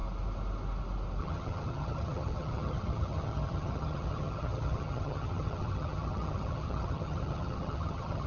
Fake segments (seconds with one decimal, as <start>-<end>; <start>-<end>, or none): 1.2-8.3